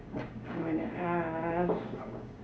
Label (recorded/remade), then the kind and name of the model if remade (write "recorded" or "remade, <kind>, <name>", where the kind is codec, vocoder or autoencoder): remade, codec, DAC